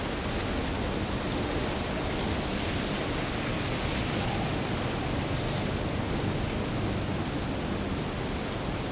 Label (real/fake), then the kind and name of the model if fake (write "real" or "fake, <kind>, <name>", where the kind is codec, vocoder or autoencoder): real